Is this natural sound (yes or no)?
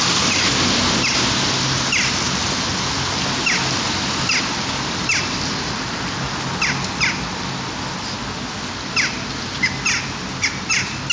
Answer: yes